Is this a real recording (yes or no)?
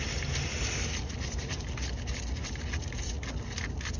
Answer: yes